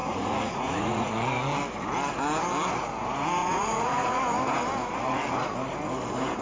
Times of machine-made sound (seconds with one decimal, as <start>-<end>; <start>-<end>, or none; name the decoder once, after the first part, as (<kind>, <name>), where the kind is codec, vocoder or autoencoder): 0.0-1.1 (vocoder, Vocos); 3.4-4.2